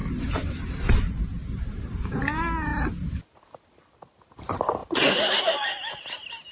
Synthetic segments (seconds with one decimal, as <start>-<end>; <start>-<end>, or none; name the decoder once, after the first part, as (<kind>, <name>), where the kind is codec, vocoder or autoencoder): none